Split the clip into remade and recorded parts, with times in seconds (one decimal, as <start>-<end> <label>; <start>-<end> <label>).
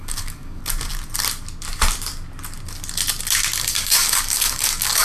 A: 0.0-0.6 remade; 0.6-3.6 recorded; 3.6-5.0 remade